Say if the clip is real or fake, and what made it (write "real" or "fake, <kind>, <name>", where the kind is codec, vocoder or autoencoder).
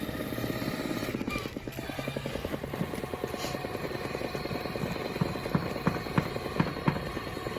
real